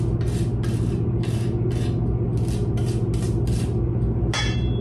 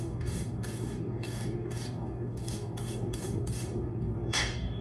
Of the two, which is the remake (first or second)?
second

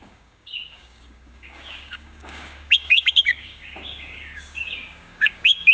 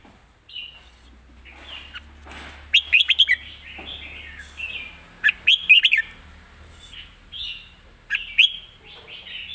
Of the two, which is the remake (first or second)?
first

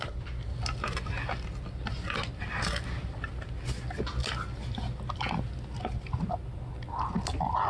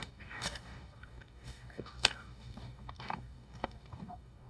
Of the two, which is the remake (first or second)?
second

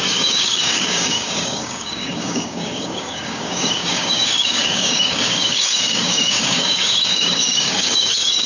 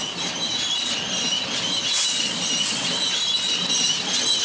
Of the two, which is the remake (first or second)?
first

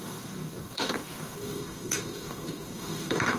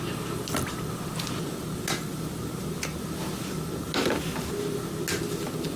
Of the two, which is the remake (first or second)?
first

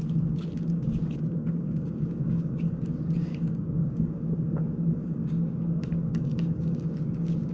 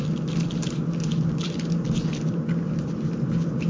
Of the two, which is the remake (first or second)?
first